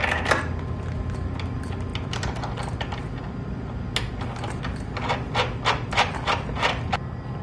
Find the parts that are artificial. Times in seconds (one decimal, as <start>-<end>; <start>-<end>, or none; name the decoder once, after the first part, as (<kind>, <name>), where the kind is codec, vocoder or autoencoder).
none